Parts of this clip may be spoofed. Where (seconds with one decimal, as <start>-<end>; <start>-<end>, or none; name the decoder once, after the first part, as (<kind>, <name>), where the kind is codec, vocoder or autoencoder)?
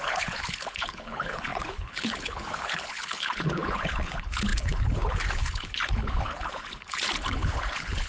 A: 0.0-8.1 (codec, HILCodec)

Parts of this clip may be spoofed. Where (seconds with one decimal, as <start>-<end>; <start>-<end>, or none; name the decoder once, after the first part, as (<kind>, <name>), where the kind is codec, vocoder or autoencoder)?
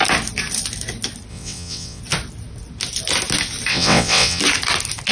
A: 1.3-2.0 (vocoder, WaveNeXt); 3.7-4.4